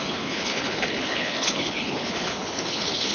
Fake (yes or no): yes